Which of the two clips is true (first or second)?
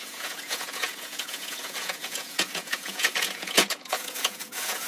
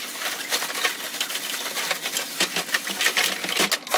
second